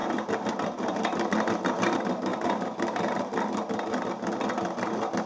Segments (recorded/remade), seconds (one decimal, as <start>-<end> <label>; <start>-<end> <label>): 0.0-5.3 recorded